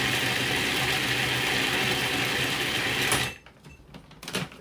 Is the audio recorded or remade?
recorded